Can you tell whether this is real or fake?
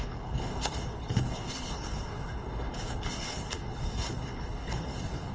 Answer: fake